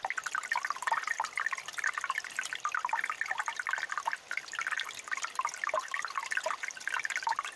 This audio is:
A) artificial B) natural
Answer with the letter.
B